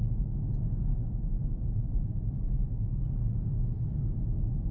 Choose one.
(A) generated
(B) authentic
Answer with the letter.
B